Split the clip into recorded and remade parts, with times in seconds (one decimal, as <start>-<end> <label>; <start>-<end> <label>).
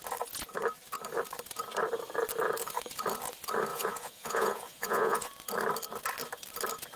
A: 0.0-3.7 recorded; 3.7-5.3 remade; 5.3-7.0 recorded